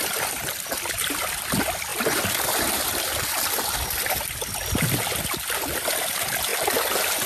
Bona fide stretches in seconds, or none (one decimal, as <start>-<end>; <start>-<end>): 0.0-7.3

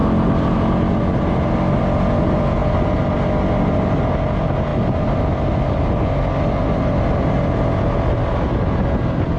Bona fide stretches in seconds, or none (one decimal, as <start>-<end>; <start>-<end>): 0.0-9.4

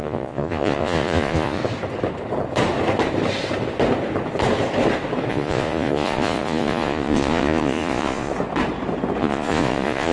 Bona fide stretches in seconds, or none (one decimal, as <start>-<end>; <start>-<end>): 1.6-5.3; 8.3-9.2

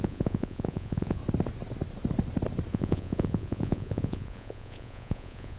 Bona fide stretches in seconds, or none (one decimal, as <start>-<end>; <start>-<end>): 1.2-2.7

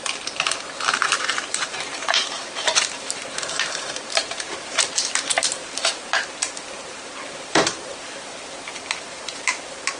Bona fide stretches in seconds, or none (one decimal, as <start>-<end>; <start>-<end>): 5.3-6.3